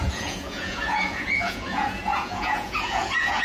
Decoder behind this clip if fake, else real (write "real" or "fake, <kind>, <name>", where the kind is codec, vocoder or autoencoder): fake, vocoder, Vocos